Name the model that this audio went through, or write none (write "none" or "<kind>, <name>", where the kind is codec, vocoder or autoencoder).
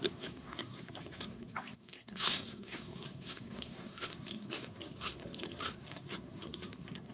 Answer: codec, SNAC